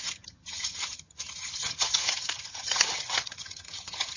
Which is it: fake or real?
fake